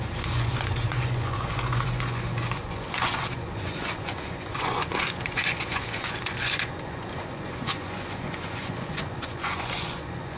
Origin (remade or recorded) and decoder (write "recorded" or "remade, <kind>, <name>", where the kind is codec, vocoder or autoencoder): remade, vocoder, Vocos